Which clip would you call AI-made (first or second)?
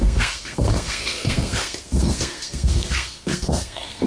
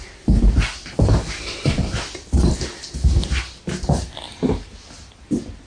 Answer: first